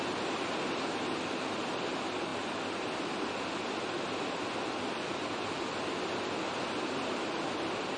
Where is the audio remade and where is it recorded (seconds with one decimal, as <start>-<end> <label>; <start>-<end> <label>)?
0.0-8.0 recorded

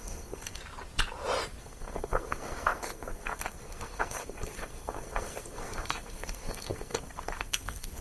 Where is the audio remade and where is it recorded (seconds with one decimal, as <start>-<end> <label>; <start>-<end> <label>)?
0.0-0.6 remade; 0.6-1.6 recorded; 1.6-8.0 remade